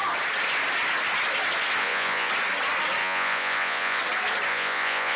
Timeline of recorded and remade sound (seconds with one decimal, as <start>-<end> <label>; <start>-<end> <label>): 0.0-1.8 recorded; 1.8-2.3 remade; 2.3-3.0 recorded; 3.0-4.0 remade; 4.0-4.5 recorded; 4.5-5.2 remade